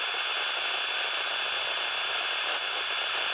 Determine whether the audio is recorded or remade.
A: recorded